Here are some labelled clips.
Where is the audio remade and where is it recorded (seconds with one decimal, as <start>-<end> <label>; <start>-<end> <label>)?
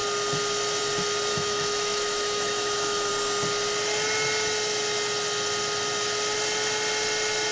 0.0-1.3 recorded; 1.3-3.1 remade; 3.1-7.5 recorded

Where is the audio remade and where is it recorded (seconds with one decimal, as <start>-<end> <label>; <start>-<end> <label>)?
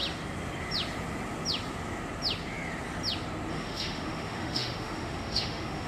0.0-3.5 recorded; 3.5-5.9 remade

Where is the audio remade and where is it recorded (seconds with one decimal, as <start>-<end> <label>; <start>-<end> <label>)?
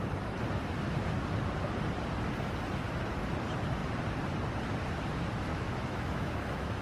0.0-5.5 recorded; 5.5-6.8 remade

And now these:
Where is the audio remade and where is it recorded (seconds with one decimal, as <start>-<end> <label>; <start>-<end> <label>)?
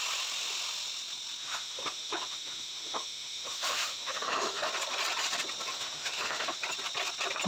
0.0-1.4 recorded; 1.4-4.7 remade; 4.7-5.7 recorded; 5.7-6.6 remade; 6.6-7.5 recorded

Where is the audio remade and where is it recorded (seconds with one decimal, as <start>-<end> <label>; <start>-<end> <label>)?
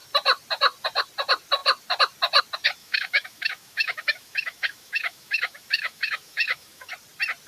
0.0-2.8 recorded; 2.8-6.9 remade; 6.9-7.5 recorded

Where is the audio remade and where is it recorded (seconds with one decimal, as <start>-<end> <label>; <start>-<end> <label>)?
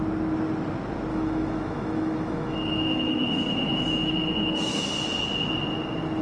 0.0-1.1 recorded; 1.1-4.8 remade; 4.8-6.2 recorded